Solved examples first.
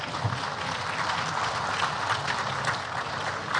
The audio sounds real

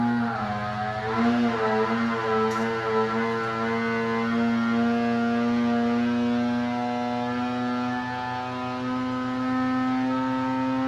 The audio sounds real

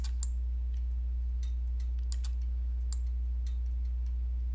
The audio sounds real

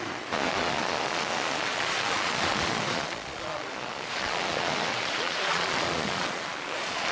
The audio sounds fake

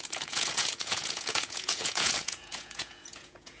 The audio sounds fake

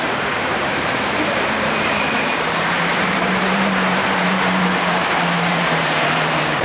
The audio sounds fake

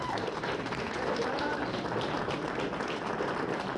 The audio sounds real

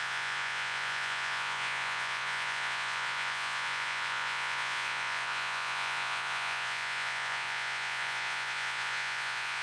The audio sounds fake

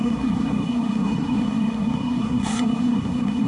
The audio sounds fake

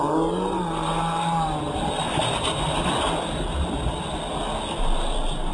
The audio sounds real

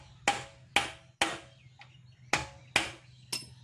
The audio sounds real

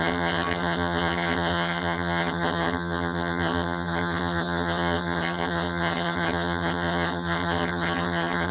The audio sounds fake